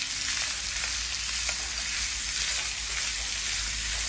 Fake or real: real